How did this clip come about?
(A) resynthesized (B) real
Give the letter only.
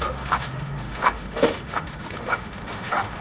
A